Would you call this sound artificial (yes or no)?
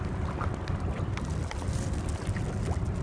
no